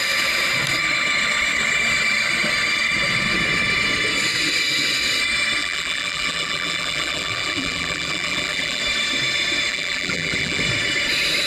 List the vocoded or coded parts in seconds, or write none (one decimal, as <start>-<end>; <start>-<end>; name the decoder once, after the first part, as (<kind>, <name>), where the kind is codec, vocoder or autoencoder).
5.6-8.8 (vocoder, BigVGAN v2); 9.7-10.6